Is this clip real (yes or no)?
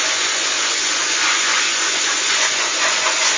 no